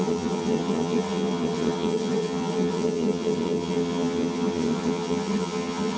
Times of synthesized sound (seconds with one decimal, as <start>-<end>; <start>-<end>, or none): 0.0-6.0